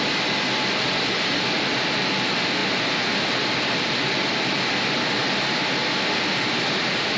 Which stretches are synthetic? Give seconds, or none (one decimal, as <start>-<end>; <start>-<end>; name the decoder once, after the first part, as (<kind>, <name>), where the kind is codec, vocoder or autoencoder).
none